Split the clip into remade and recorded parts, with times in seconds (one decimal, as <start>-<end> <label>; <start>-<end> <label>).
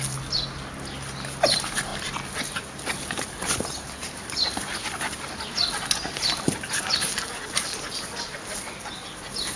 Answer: 0.0-9.6 recorded